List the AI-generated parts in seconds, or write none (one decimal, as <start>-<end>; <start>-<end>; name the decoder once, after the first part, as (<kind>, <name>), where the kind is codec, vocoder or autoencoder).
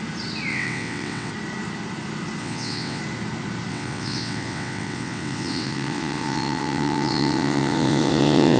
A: 0.5-1.3 (vocoder, WaveNeXt); 2.4-3.0; 3.7-8.6